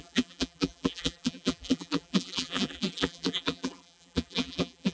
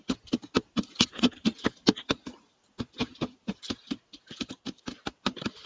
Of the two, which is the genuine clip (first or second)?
second